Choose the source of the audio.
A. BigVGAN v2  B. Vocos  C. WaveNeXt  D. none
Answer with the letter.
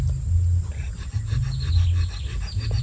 D